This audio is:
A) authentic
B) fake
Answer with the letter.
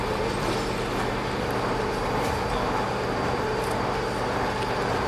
A